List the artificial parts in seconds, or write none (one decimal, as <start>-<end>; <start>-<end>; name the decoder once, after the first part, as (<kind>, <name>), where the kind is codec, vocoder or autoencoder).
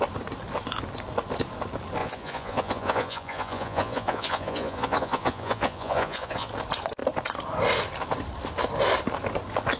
2.0-6.5 (vocoder, Vocos)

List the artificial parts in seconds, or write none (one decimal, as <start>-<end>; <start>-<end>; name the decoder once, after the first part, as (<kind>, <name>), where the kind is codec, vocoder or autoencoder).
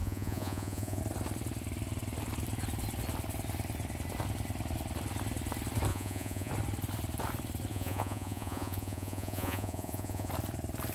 0.0-1.0 (vocoder, Vocos); 5.9-6.5; 7.7-10.3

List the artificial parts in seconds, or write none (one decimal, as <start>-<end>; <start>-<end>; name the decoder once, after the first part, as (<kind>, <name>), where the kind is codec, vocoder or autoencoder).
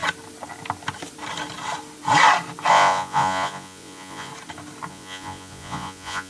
2.7-4.3 (vocoder, Vocos); 4.9-6.3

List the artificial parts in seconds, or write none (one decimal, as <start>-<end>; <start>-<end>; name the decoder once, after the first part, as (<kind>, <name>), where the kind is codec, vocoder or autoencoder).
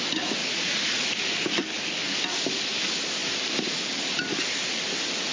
0.4-1.1 (vocoder, Vocos)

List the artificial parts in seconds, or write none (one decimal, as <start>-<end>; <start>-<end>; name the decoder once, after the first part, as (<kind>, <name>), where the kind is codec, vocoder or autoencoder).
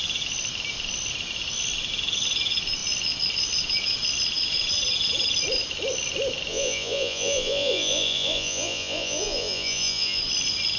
6.5-10.2 (vocoder, Vocos)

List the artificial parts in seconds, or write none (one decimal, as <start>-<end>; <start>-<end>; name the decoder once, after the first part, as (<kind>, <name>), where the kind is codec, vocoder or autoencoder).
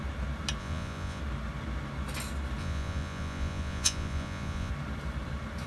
0.6-1.2 (vocoder, Vocos); 2.6-4.7